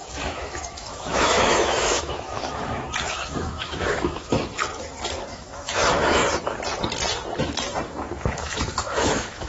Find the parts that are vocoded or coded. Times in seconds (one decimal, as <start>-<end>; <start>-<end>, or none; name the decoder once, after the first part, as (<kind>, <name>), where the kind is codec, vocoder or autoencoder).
0.0-4.6 (autoencoder, DAC-VAE); 5.3-6.2; 7.4-9.5